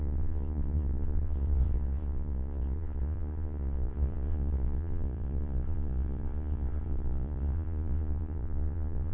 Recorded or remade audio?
remade